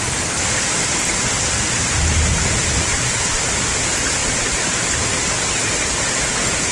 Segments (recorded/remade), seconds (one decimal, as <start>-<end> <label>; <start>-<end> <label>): 0.0-2.9 recorded; 2.9-3.4 remade; 3.4-4.2 recorded; 4.2-4.9 remade; 4.9-6.7 recorded